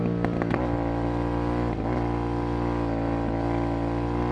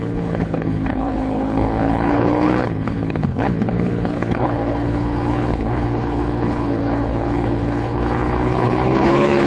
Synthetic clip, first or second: second